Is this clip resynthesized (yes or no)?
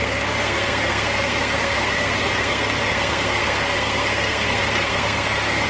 yes